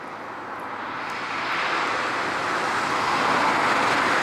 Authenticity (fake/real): real